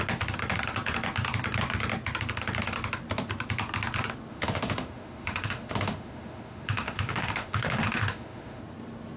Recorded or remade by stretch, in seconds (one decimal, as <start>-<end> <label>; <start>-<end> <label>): 0.0-4.3 recorded; 4.3-8.6 remade; 8.6-9.2 recorded